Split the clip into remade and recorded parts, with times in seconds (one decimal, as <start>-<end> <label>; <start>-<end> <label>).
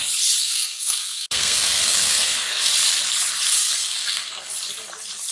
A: 0.0-0.4 recorded; 0.4-2.7 remade; 2.7-3.6 recorded; 3.6-4.5 remade; 4.5-5.3 recorded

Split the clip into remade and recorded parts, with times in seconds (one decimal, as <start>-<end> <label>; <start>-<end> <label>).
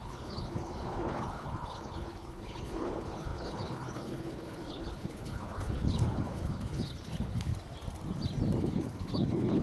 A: 0.0-7.5 remade; 7.5-8.6 recorded; 8.6-9.6 remade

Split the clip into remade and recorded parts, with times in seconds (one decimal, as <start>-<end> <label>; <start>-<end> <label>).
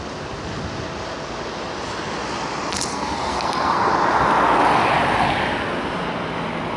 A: 0.0-2.9 recorded; 2.9-3.9 remade; 3.9-6.8 recorded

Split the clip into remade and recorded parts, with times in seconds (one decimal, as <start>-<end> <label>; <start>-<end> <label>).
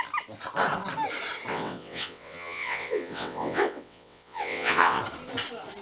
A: 0.0-1.5 recorded; 1.5-5.0 remade; 5.0-5.8 recorded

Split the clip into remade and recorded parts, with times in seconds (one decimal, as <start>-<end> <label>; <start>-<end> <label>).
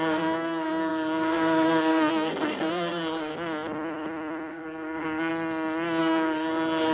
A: 0.0-3.3 remade; 3.3-4.5 recorded; 4.5-5.3 remade; 5.3-6.0 recorded; 6.0-6.9 remade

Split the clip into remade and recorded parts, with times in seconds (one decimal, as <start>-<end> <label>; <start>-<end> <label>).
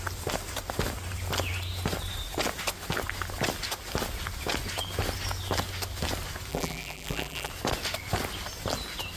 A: 0.0-6.5 recorded; 6.5-7.5 remade; 7.5-9.2 recorded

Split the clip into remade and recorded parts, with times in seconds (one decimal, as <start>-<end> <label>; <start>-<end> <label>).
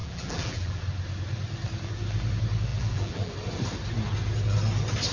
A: 0.0-0.8 remade; 0.8-2.7 recorded; 2.7-3.3 remade; 3.3-5.1 recorded